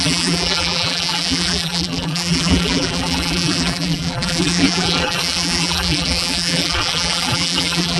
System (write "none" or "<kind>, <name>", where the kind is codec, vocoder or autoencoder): vocoder, BigVGAN v2